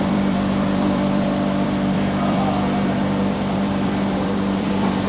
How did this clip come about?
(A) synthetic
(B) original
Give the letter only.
A